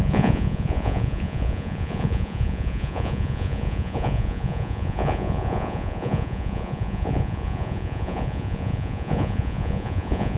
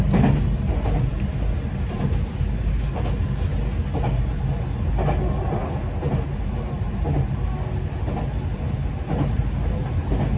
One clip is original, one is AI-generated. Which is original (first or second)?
second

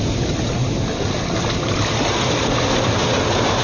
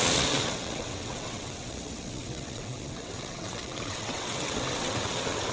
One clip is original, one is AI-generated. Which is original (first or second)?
first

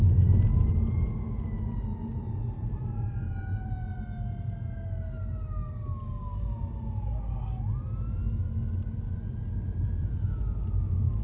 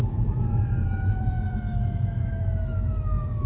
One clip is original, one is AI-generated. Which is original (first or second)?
first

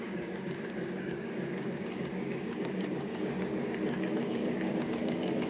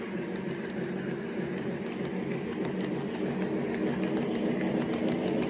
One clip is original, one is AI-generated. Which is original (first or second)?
second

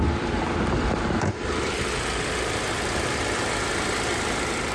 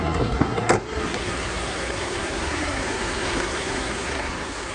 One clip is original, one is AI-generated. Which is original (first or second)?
first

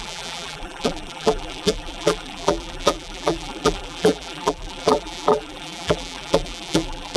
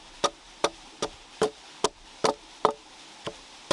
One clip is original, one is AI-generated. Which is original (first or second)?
second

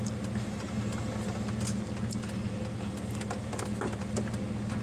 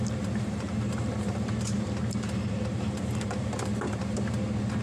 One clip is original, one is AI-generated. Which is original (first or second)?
first